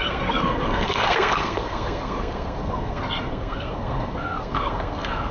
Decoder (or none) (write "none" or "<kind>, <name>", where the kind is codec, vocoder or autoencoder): codec, SNAC